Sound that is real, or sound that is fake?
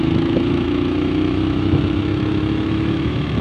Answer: fake